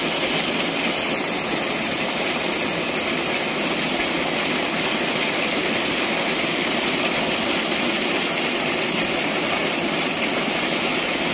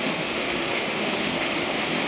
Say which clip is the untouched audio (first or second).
first